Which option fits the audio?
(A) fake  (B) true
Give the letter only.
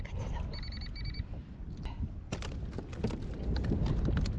B